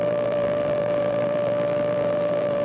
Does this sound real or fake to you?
fake